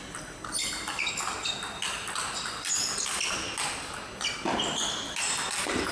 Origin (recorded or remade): recorded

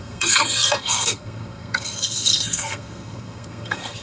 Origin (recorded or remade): remade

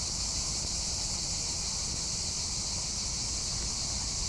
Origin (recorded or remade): recorded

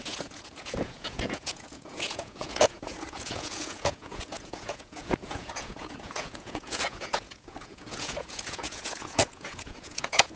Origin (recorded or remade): remade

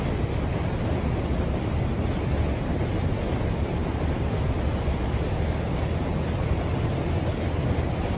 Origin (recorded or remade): recorded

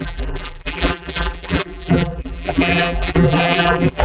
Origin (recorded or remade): remade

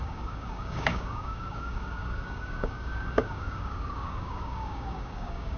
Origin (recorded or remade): remade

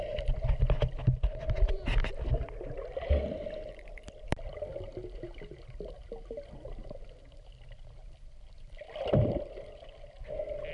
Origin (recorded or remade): recorded